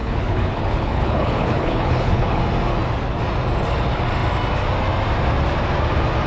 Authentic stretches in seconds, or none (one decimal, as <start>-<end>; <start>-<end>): 2.4-6.3